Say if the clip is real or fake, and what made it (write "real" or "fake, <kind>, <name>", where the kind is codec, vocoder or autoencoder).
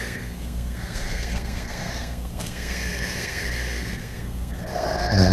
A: fake, codec, SNAC